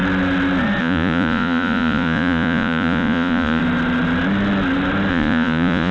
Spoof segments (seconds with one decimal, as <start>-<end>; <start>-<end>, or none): 0.8-3.6; 5.1-5.9